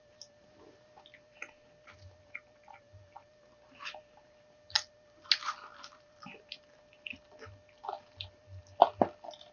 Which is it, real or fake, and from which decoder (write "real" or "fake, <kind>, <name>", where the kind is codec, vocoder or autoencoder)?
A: real